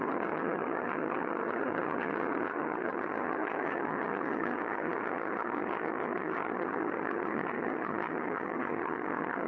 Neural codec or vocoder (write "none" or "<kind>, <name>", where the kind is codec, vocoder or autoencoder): vocoder, HiFi-GAN